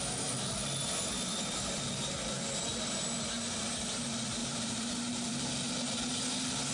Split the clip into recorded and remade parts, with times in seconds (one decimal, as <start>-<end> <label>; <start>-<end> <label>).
0.0-4.4 recorded; 4.4-5.5 remade; 5.5-6.7 recorded